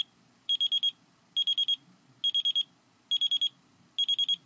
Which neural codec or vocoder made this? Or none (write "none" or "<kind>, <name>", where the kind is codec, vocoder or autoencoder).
none